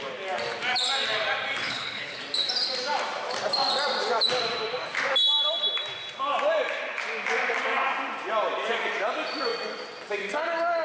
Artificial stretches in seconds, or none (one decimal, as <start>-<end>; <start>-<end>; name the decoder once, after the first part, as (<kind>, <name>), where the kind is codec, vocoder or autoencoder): 1.6-2.2 (codec, HILCodec)